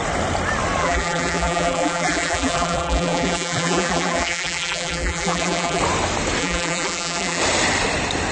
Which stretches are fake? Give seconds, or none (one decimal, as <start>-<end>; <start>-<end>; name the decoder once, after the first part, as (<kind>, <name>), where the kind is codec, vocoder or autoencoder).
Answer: 0.8-5.8 (vocoder, BigVGAN v2); 6.4-7.4